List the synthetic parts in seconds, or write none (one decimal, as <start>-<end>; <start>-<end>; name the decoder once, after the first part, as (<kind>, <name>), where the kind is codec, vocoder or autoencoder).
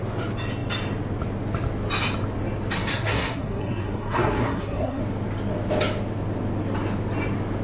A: 2.9-5.0 (codec, SNAC)